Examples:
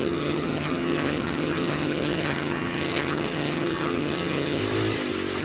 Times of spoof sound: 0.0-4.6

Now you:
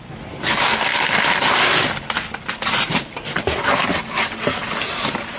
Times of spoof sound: none

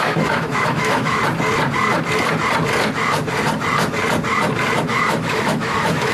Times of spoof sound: 0.0-1.2; 4.9-6.1

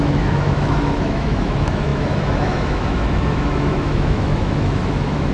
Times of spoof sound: 0.0-5.3

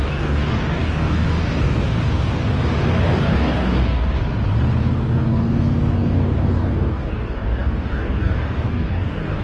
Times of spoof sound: 0.0-4.2; 4.8-9.4